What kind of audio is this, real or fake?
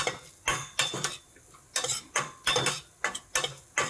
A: real